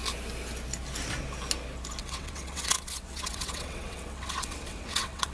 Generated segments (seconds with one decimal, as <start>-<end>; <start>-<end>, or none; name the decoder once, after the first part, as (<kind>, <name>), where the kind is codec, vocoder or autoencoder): 2.0-5.3 (vocoder, WaveNeXt)